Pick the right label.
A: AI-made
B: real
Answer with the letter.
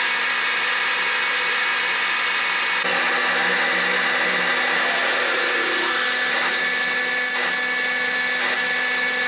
B